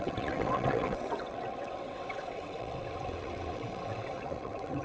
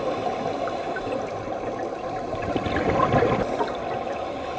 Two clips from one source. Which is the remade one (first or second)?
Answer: first